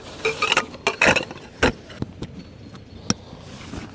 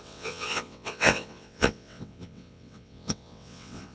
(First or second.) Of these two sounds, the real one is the first